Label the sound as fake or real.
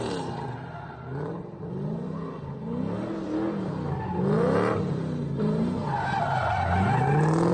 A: real